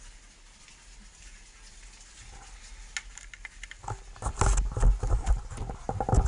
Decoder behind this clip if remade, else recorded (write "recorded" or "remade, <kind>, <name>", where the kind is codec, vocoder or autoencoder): recorded